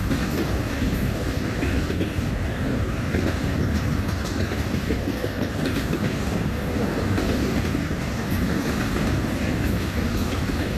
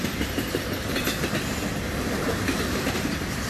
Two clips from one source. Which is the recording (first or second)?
second